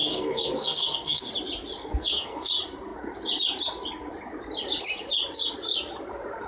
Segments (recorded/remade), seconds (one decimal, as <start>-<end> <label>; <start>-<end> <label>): 0.0-1.3 remade; 1.3-1.8 recorded; 1.8-2.5 remade; 2.5-6.5 recorded